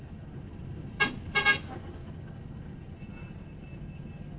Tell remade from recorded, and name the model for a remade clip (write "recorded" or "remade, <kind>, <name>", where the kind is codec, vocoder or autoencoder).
recorded